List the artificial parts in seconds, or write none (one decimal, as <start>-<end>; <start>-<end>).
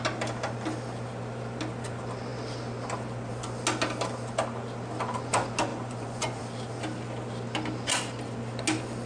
5.7-6.4